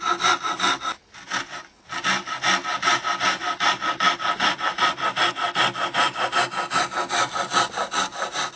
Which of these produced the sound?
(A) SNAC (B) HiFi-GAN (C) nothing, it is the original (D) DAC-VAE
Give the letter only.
C